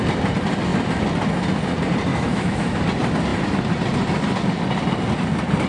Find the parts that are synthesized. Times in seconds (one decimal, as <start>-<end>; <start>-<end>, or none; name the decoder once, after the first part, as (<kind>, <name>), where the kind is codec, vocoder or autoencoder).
2.1-2.8 (autoencoder, DAC-VAE)